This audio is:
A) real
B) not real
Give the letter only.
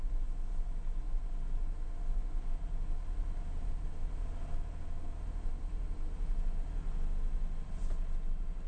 A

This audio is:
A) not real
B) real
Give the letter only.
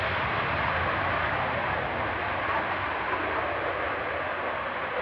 B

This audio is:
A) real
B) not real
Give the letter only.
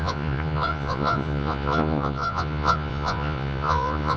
B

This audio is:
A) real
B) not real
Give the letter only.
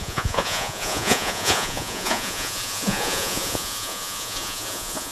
B